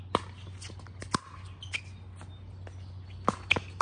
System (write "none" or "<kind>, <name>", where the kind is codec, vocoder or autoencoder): none